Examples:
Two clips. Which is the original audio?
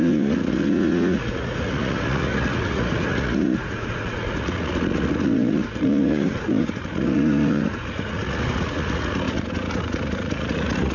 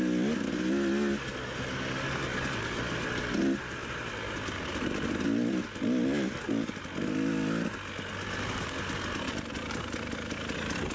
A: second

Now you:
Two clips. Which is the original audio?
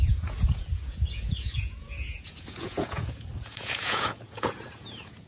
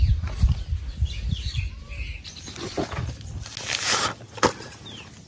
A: second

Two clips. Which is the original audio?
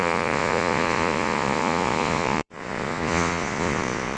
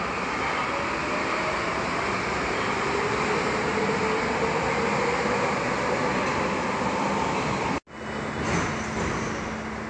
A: second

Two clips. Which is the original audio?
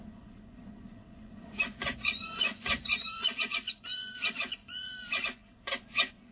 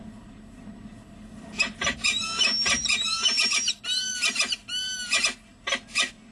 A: second